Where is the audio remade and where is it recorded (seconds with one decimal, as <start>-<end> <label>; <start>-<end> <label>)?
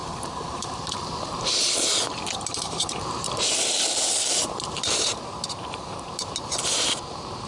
0.0-7.5 remade